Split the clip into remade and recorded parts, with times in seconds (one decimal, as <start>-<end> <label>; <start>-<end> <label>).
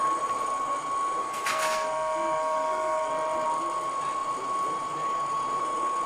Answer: 0.0-1.2 recorded; 1.2-3.1 remade; 3.1-6.1 recorded